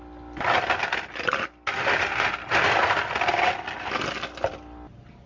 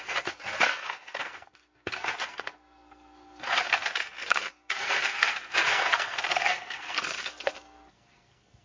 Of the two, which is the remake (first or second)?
second